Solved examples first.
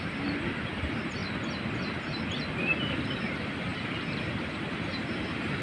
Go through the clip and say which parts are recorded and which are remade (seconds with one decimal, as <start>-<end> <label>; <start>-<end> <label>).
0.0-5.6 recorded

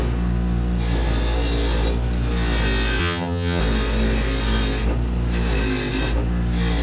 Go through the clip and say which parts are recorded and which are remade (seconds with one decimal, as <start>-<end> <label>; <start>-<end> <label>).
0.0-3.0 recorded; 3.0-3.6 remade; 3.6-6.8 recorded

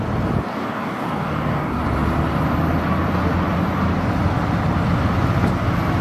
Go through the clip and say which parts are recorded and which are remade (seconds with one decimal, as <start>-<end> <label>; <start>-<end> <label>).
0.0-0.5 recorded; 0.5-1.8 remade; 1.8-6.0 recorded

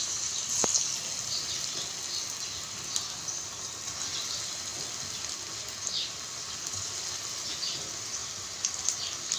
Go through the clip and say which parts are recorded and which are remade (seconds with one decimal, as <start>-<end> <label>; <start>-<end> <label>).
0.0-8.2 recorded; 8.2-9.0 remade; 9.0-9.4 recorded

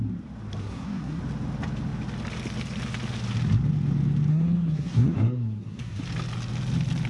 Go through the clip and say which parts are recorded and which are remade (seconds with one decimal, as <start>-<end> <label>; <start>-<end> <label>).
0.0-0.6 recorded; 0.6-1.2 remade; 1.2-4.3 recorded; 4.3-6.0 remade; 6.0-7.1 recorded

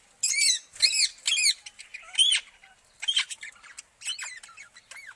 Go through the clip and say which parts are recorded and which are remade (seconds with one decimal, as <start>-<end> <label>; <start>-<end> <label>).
0.0-5.2 recorded

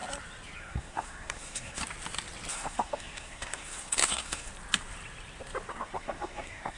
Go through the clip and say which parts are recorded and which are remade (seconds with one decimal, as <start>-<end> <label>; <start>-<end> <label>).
0.0-0.6 recorded; 0.6-1.8 remade; 1.8-2.5 recorded; 2.5-4.5 remade; 4.5-5.7 recorded; 5.7-6.8 remade

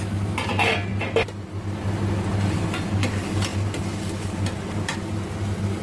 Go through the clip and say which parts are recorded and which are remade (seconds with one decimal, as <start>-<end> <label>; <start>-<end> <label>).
0.0-5.8 recorded